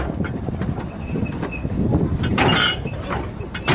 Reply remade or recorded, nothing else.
recorded